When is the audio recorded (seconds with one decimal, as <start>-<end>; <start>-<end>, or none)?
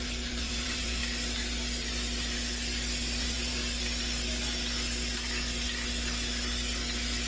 1.0-3.2; 3.6-7.3